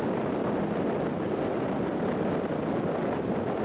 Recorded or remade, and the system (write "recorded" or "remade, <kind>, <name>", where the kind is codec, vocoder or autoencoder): recorded